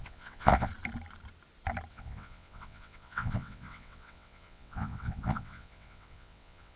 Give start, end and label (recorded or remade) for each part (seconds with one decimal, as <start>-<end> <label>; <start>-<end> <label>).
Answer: 0.0-0.7 remade; 0.7-1.9 recorded; 1.9-6.8 remade

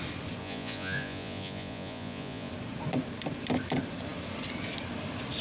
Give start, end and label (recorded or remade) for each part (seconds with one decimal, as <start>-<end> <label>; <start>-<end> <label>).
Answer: 0.0-0.4 recorded; 0.4-2.5 remade; 2.5-5.4 recorded

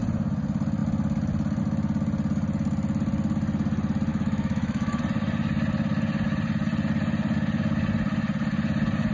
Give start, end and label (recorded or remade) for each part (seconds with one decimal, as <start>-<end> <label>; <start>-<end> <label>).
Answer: 0.0-4.1 recorded; 4.1-5.0 remade; 5.0-9.1 recorded